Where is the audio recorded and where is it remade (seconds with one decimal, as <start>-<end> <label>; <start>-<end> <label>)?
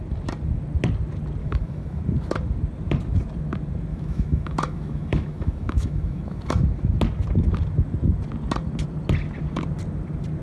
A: 0.0-1.4 recorded; 1.4-2.0 remade; 2.0-3.9 recorded; 3.9-6.5 remade; 6.5-10.4 recorded